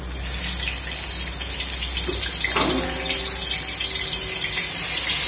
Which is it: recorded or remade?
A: recorded